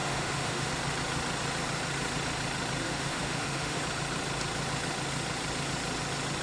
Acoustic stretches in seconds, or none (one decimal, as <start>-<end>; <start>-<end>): 0.7-2.8; 3.8-6.4